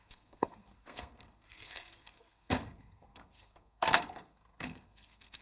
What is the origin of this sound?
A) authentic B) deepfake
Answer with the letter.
B